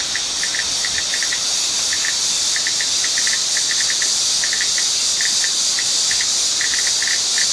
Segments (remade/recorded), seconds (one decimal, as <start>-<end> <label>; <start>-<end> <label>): 0.0-7.5 recorded